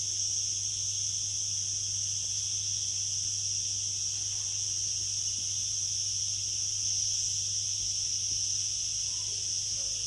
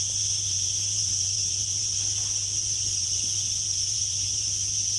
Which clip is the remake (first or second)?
second